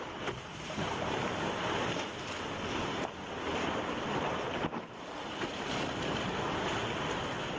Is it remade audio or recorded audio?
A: recorded